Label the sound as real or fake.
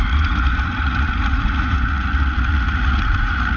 fake